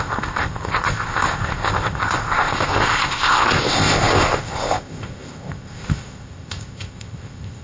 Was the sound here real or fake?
fake